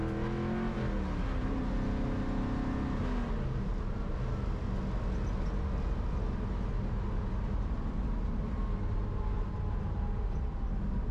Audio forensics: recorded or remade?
recorded